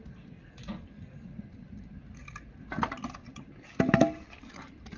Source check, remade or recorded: recorded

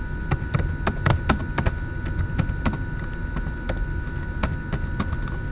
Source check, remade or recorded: recorded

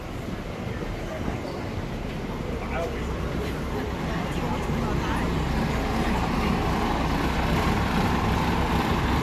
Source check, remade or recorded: recorded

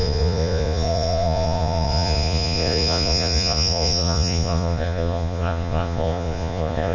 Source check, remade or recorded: remade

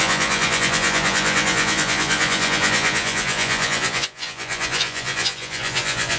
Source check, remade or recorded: remade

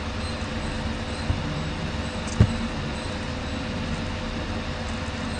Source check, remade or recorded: recorded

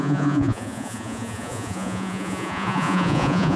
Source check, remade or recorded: remade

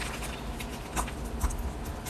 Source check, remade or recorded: recorded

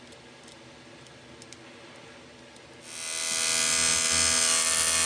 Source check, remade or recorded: recorded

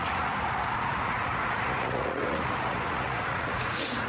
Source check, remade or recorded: remade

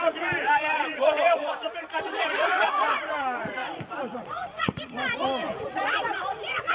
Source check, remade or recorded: remade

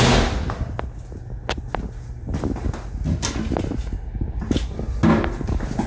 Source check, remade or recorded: recorded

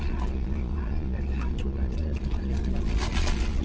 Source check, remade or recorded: remade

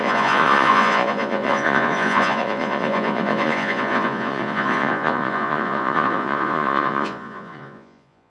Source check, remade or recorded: remade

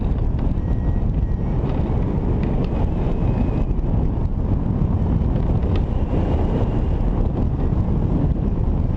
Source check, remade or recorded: recorded